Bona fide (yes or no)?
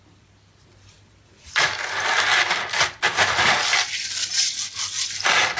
yes